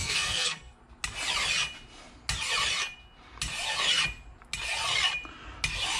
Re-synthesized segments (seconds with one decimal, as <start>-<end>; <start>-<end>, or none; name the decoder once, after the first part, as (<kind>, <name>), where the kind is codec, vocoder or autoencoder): 0.0-0.8 (codec, SNAC)